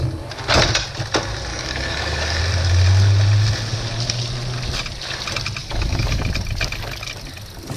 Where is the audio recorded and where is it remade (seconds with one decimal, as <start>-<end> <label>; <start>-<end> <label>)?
0.0-1.5 recorded; 1.5-2.4 remade; 2.4-5.6 recorded; 5.6-6.2 remade; 6.2-7.8 recorded